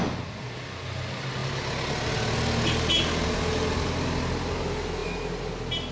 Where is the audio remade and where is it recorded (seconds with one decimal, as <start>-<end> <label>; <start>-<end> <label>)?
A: 0.0-5.9 recorded